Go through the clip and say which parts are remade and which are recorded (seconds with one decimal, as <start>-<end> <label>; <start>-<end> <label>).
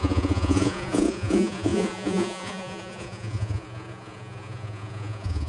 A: 0.0-5.5 remade